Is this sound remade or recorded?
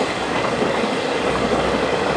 remade